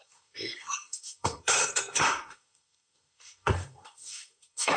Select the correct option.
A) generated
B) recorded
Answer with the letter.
A